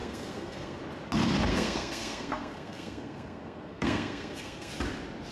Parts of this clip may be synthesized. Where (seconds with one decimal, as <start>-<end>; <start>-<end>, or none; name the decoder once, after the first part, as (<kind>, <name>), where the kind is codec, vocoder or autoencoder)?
0.0-0.8 (codec, SNAC); 1.5-4.7